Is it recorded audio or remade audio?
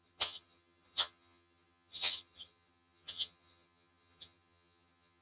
remade